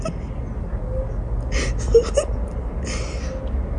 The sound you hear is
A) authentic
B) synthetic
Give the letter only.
A